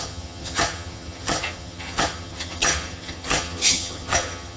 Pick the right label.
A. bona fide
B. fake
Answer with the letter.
B